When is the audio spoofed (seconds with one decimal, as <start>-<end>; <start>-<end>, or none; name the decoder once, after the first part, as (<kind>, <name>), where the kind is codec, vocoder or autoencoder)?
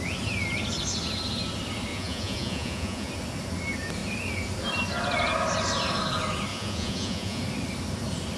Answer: 1.9-3.1 (vocoder, Vocos); 6.5-7.4